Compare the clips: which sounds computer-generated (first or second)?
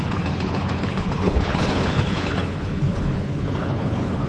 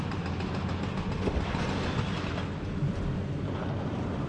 first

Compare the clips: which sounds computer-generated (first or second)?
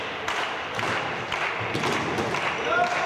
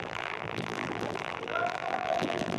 second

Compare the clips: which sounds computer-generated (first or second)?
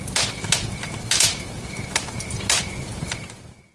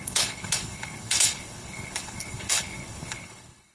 second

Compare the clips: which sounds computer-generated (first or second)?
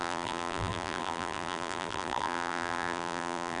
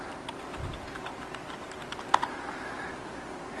first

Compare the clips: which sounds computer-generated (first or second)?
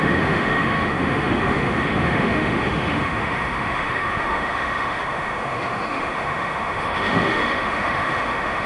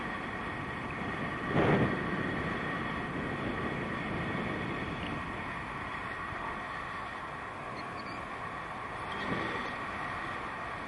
first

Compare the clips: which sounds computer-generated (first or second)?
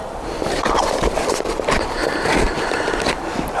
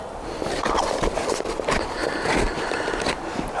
first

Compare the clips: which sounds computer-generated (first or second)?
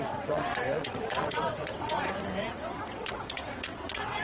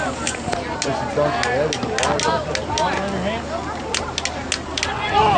first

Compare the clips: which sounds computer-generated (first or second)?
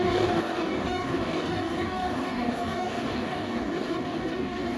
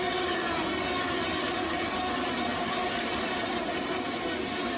first